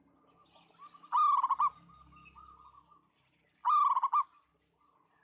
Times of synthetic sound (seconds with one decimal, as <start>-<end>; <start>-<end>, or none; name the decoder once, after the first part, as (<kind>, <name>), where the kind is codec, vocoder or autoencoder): 3.1-5.2 (vocoder, BigVGAN v2)